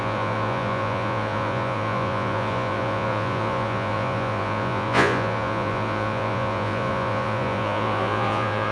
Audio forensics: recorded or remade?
remade